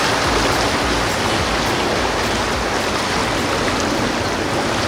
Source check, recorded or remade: recorded